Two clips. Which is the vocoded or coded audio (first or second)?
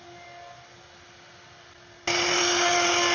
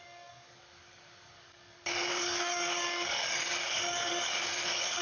second